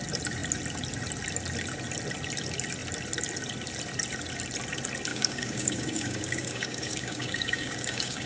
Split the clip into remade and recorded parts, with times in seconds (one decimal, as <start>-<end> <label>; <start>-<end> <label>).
0.0-5.1 recorded; 5.1-8.3 remade